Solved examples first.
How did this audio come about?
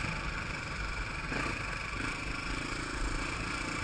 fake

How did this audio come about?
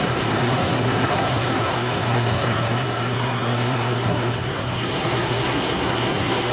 fake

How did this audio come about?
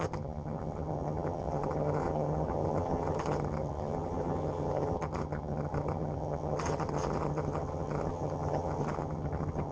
fake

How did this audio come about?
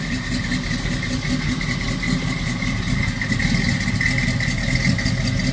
real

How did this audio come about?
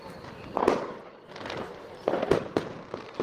real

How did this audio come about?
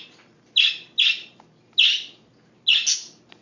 real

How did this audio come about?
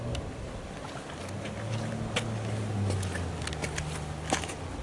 real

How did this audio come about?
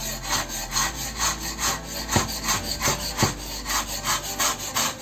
real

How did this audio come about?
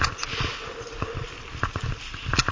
real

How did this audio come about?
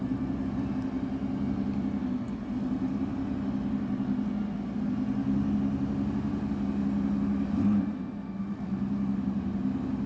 real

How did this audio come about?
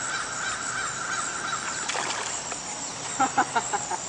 real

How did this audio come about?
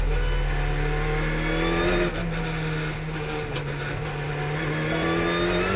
real